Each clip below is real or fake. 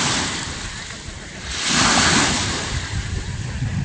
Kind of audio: fake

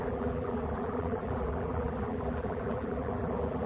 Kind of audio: fake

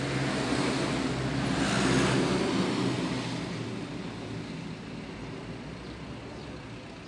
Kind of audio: real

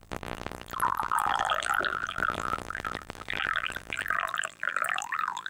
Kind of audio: fake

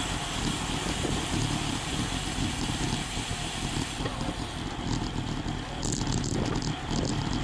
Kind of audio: fake